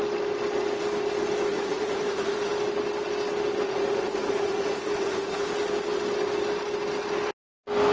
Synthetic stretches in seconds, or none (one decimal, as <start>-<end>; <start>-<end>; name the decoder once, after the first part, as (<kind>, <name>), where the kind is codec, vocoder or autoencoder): 1.5-2.5 (vocoder, Vocos); 3.6-5.5